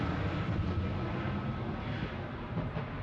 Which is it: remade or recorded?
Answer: recorded